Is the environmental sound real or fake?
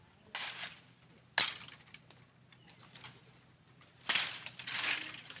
real